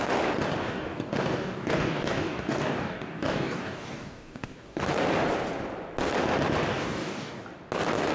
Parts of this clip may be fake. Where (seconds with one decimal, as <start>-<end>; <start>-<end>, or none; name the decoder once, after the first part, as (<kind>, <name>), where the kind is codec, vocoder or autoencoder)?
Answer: 0.6-4.9 (codec, DAC); 6.7-7.4